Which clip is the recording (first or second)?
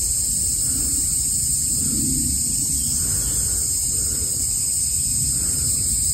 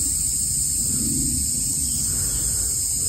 second